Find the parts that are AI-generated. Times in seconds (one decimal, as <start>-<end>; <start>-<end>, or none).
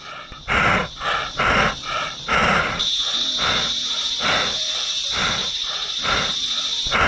2.4-2.9; 5.4-6.3